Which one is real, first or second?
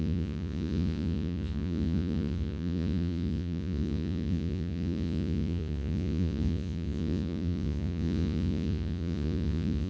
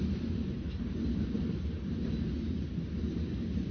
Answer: second